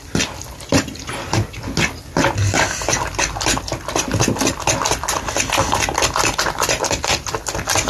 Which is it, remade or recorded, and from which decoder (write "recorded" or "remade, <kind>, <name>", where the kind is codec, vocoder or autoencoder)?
recorded